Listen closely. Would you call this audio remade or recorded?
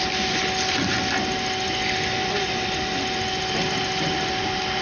recorded